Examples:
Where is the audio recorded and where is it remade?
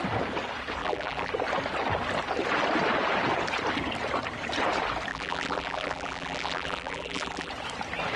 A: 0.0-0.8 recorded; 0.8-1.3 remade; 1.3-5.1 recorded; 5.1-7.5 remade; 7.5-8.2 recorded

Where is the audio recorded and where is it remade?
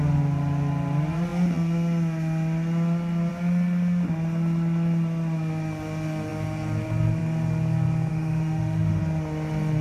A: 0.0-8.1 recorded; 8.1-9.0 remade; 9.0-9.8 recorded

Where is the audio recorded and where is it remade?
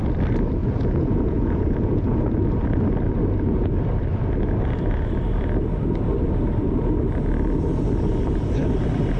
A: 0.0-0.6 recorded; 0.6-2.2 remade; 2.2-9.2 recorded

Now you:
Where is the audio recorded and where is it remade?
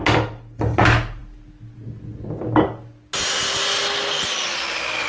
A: 0.0-5.1 recorded